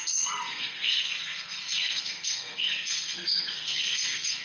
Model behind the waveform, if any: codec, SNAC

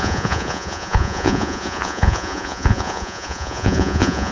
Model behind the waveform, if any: vocoder, Vocos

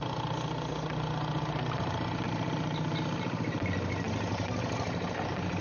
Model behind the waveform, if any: none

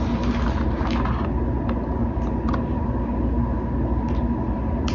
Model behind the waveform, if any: none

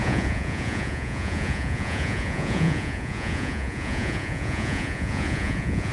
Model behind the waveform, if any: vocoder, Vocos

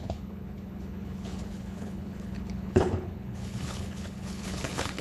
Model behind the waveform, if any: codec, HILCodec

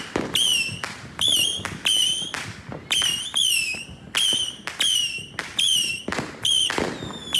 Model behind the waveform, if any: none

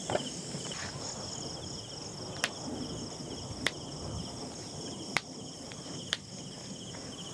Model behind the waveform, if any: none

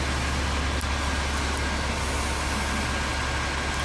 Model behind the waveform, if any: none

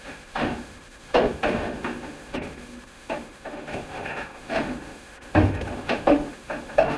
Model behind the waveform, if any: autoencoder, DAC-VAE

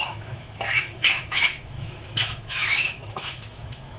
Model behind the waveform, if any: autoencoder, DAC-VAE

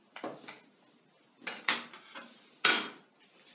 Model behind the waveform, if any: none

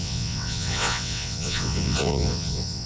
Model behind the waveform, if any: vocoder, WaveNeXt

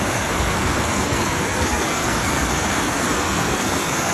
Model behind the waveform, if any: codec, SNAC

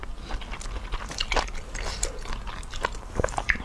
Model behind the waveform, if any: none